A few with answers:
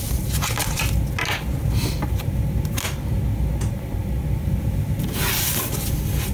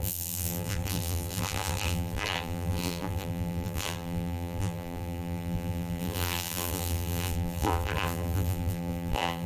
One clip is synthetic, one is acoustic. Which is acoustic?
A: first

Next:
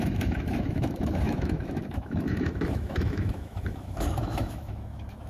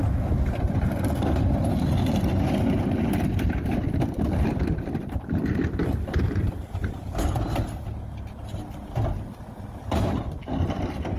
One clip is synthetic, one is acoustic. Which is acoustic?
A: second